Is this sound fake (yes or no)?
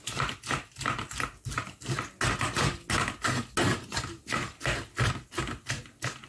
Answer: no